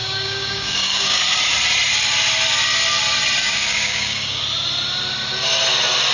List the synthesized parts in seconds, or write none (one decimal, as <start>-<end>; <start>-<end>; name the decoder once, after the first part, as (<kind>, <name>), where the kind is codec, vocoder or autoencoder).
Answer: 0.0-1.2 (codec, DAC); 3.4-4.4